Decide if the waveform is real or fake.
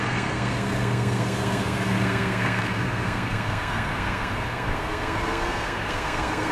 fake